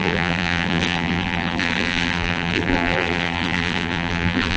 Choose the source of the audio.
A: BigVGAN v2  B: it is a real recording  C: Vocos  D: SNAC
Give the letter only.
A